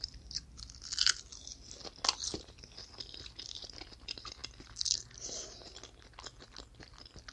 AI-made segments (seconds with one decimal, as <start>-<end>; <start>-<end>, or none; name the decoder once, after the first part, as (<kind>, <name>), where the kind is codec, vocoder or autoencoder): none